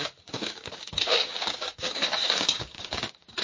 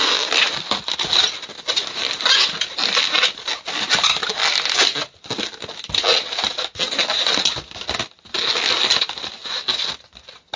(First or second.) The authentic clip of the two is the second